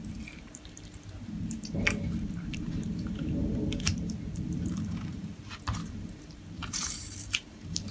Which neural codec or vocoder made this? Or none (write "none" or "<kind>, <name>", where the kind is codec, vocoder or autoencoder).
vocoder, BigVGAN v2